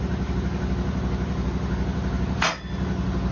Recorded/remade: recorded